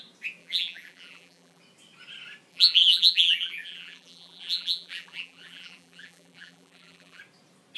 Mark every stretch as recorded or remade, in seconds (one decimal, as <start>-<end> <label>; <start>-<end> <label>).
0.0-0.4 recorded; 0.4-1.6 remade; 1.6-2.5 recorded; 2.5-7.2 remade; 7.2-7.8 recorded